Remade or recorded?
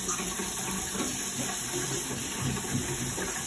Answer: recorded